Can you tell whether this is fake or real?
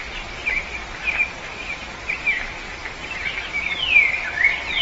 real